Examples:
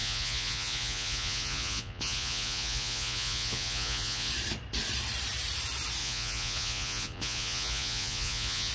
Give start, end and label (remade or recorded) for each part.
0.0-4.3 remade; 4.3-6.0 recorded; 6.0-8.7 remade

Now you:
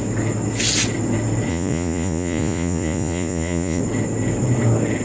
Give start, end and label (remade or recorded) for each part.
0.0-1.5 recorded; 1.5-3.8 remade; 3.8-5.0 recorded

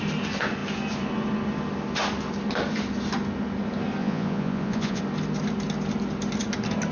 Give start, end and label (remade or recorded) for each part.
0.0-4.0 recorded; 4.0-5.0 remade; 5.0-6.9 recorded

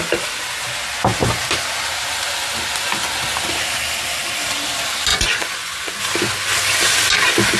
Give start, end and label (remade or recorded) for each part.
0.0-5.1 recorded; 5.1-6.0 remade; 6.0-7.6 recorded

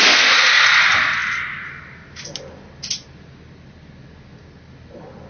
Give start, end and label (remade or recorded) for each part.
0.0-5.3 recorded